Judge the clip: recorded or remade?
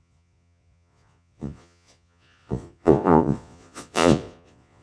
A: remade